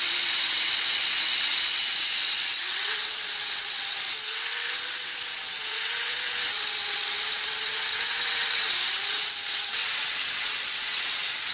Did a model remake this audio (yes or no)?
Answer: yes